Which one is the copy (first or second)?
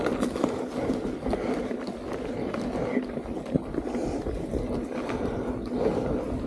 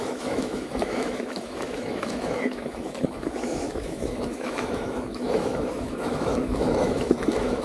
second